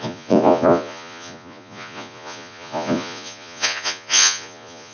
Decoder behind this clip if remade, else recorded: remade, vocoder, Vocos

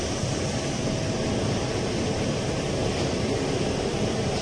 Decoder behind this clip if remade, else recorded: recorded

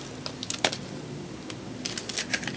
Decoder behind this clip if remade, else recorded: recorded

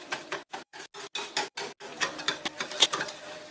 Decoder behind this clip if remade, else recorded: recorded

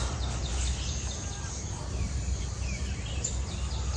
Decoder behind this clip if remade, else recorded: recorded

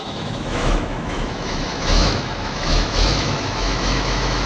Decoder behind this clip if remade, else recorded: remade, autoencoder, DAC-VAE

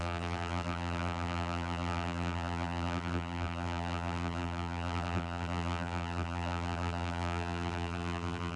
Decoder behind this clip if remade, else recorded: remade, vocoder, BigVGAN v2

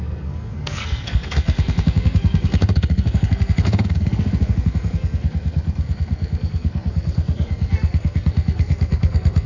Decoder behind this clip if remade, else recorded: remade, codec, SNAC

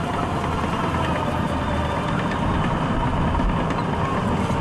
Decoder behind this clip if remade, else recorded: recorded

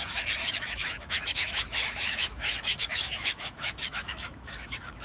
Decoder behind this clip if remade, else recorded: remade, autoencoder, DAC-VAE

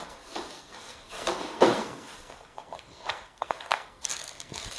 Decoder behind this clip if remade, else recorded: remade, codec, SNAC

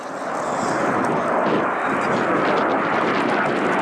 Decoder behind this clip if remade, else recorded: recorded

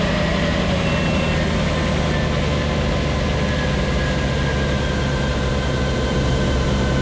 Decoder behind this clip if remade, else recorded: recorded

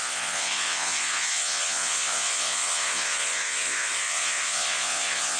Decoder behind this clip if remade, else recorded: remade, vocoder, Vocos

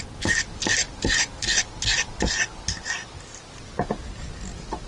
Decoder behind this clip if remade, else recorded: recorded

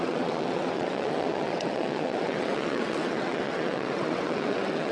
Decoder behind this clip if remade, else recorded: remade, vocoder, WaveNeXt